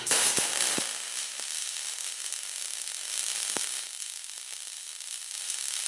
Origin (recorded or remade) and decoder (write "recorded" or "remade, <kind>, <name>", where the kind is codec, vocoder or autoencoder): remade, autoencoder, DAC-VAE